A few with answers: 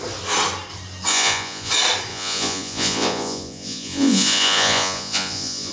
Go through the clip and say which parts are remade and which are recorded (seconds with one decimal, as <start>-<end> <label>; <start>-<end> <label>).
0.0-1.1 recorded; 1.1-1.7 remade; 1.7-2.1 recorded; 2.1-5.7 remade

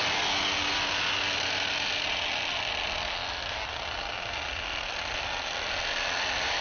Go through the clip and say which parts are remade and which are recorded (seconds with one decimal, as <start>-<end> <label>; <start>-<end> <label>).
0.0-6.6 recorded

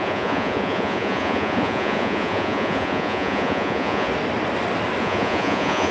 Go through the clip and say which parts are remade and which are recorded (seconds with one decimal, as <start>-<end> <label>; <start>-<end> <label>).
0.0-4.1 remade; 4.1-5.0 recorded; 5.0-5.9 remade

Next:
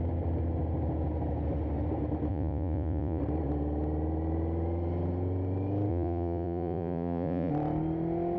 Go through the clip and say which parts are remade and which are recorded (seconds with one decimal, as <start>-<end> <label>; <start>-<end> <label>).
0.0-2.3 recorded; 2.3-3.2 remade; 3.2-5.9 recorded; 5.9-7.5 remade; 7.5-8.4 recorded

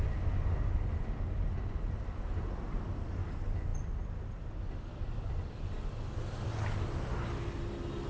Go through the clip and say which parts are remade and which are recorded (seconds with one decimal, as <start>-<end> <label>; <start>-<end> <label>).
0.0-8.1 recorded